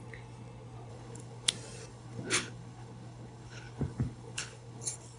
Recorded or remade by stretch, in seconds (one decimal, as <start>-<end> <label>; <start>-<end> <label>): 0.0-0.9 recorded; 0.9-1.5 remade; 1.5-1.9 recorded; 1.9-5.2 remade